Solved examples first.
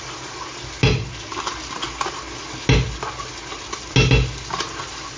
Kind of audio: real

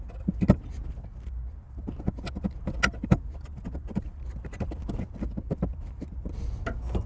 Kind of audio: real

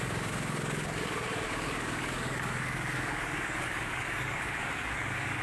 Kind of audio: fake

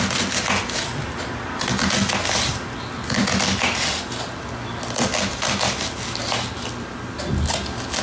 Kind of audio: real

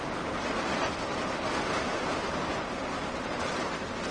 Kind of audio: fake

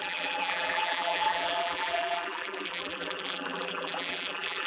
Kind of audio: fake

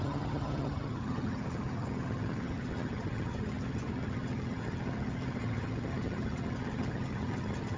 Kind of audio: fake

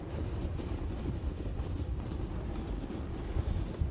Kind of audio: real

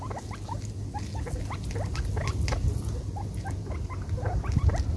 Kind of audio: real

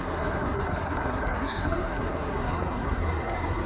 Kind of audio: fake